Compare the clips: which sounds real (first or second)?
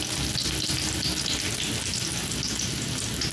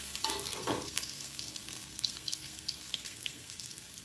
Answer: first